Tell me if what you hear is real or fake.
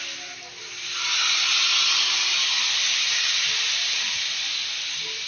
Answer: real